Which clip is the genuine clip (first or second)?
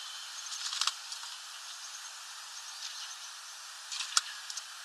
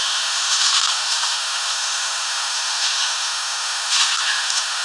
first